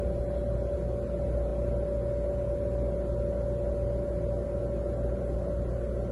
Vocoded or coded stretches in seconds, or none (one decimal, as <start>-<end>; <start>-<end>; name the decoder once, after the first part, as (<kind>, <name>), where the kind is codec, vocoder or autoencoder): none